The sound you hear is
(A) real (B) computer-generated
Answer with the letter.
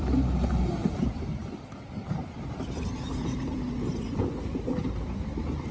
B